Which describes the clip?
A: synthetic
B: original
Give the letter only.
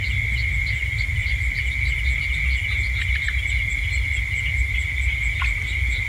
B